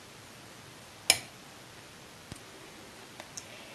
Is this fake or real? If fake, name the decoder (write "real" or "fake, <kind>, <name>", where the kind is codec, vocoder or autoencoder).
real